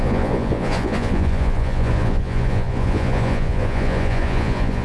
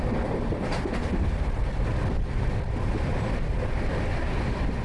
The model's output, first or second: first